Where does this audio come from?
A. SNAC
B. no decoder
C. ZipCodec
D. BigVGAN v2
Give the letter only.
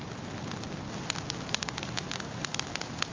B